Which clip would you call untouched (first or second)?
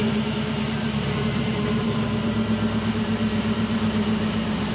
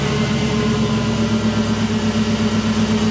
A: second